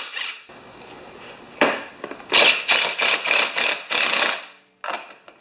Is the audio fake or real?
real